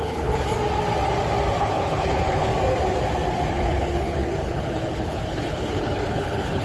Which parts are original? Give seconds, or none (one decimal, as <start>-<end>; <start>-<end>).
0.5-1.6; 2.5-3.5